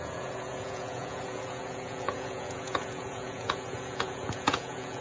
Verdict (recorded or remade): remade